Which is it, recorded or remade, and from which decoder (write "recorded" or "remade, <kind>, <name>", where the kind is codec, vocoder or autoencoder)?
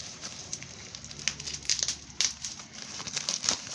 remade, vocoder, BigVGAN v2